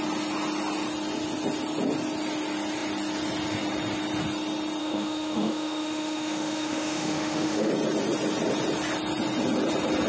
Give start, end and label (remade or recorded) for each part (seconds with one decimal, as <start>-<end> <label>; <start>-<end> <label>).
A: 0.0-4.8 recorded; 4.8-7.7 remade; 7.7-10.1 recorded